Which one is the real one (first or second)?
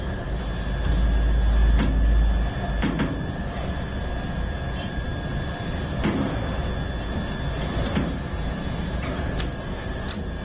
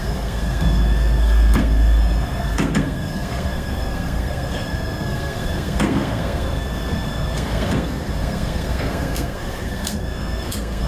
first